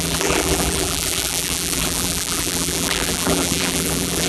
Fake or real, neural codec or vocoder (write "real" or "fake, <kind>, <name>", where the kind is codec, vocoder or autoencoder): fake, vocoder, BigVGAN v2